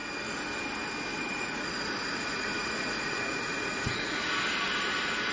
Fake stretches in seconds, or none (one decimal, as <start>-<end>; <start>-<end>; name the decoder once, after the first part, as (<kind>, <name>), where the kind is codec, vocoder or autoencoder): 1.1-4.3 (vocoder, Vocos)